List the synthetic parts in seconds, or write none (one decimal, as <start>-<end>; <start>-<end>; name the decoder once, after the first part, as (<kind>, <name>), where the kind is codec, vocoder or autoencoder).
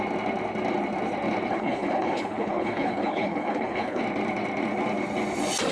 1.5-4.0 (codec, HILCodec)